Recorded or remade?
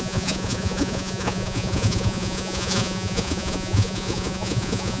remade